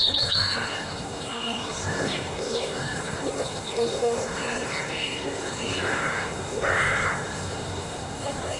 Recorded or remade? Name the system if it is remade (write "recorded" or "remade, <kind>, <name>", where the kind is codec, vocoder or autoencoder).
remade, codec, SNAC